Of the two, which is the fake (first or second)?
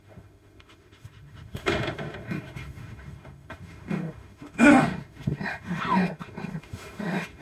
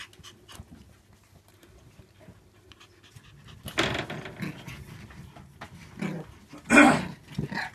first